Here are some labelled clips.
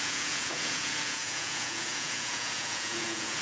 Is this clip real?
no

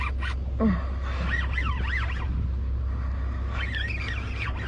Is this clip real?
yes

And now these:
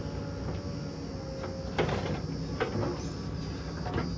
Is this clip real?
yes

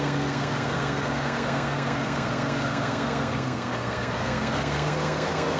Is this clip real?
no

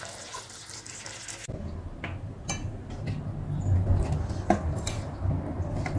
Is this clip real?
yes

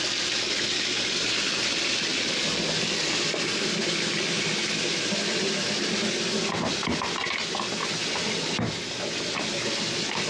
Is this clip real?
yes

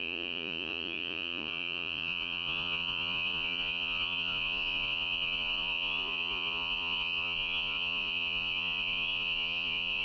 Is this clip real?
no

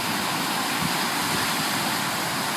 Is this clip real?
yes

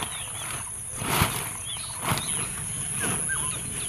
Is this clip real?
yes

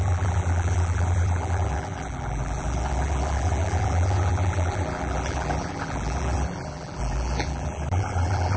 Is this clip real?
no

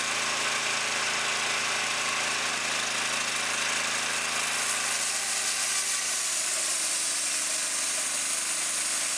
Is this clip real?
yes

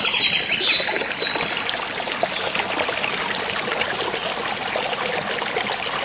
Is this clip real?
yes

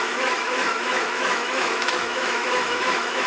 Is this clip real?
no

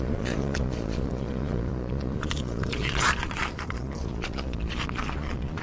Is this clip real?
no